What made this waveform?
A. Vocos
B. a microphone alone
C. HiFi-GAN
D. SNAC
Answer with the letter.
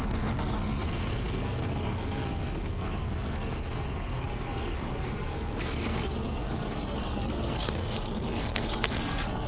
D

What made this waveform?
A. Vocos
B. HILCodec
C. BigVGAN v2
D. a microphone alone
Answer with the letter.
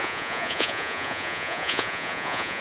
A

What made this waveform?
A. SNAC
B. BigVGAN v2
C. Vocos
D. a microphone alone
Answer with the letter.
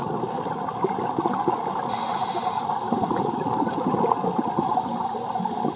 D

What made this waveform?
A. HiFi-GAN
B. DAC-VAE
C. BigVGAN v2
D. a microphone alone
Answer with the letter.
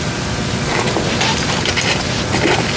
D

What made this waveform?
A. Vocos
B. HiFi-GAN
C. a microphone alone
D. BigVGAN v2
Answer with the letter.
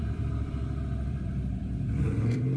D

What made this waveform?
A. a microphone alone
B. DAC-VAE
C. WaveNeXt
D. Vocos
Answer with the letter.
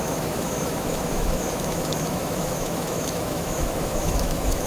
B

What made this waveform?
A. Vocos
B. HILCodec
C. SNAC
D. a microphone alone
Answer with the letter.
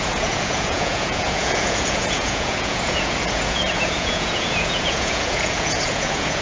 A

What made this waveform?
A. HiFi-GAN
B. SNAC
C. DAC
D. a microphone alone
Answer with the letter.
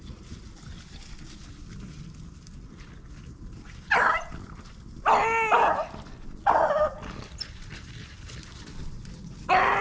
D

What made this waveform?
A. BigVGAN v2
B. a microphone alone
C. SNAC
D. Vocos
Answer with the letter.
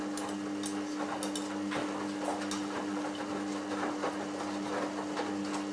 B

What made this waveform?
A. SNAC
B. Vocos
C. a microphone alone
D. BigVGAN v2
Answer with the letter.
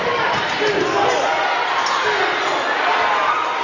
C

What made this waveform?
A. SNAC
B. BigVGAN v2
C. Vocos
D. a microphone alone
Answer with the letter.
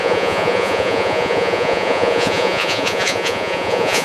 C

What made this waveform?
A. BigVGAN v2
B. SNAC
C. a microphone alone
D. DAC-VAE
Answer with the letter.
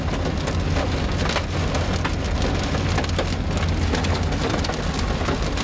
C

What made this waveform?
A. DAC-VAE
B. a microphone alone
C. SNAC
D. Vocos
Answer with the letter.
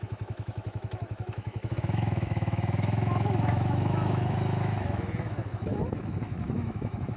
A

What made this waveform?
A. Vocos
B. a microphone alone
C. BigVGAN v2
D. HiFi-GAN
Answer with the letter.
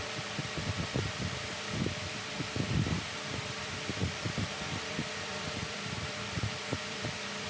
C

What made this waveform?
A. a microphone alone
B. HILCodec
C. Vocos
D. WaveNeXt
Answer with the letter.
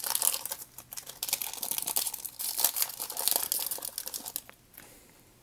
A